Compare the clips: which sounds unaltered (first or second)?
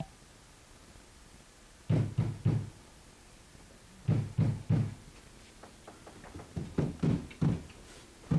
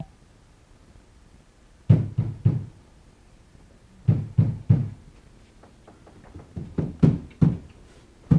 first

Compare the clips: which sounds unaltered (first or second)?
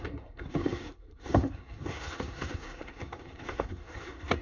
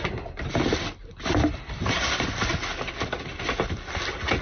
second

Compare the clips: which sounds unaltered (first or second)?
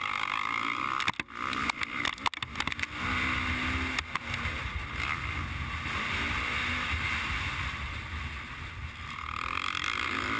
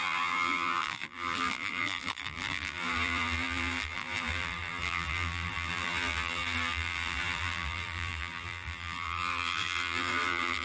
first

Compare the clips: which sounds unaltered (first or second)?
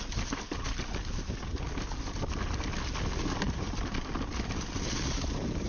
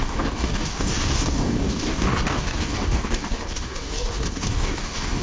first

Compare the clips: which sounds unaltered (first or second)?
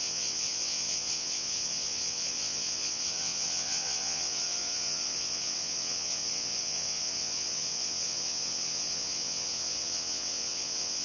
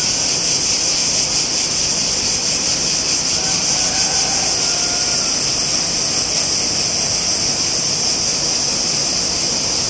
second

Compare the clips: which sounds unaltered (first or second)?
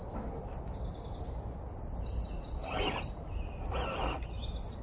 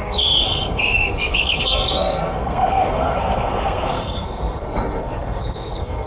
first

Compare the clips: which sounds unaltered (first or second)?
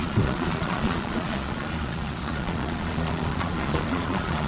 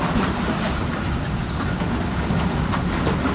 second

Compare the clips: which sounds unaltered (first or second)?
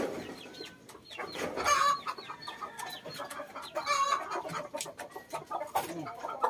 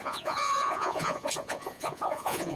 first